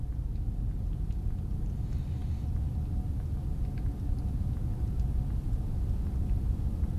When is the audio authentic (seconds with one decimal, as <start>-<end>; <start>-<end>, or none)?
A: 0.0-7.0